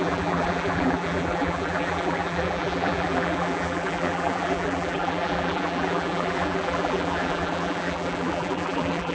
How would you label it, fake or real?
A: fake